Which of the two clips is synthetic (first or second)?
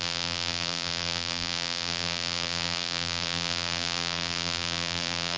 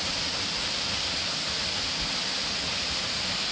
first